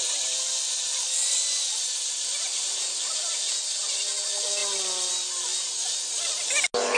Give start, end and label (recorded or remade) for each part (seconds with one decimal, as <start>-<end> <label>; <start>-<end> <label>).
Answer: 0.0-7.0 recorded